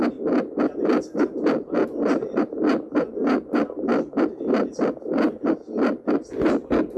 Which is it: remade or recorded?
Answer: recorded